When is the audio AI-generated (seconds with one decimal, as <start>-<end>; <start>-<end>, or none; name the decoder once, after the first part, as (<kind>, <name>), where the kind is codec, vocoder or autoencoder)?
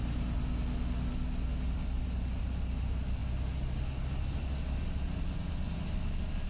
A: none